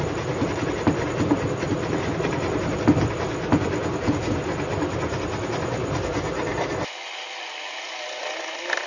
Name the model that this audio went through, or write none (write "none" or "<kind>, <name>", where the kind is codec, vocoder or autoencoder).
none